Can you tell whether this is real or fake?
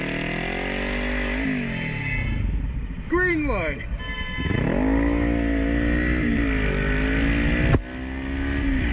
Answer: real